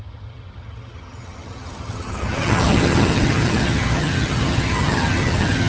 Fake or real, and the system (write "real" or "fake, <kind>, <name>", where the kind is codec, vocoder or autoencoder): fake, vocoder, HiFi-GAN